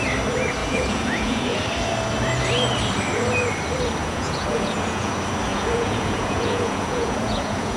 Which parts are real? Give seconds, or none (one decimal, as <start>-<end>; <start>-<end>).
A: 0.0-0.6; 1.6-4.0; 5.1-5.5